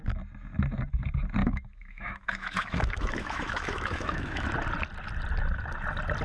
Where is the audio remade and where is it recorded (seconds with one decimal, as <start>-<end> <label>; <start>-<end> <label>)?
0.0-1.4 recorded; 1.4-4.5 remade; 4.5-6.2 recorded